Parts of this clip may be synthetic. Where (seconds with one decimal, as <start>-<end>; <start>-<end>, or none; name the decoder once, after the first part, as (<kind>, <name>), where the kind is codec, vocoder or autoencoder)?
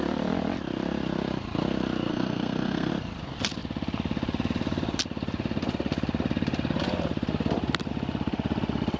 2.1-2.9 (codec, SNAC)